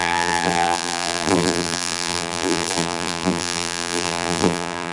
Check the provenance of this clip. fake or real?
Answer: fake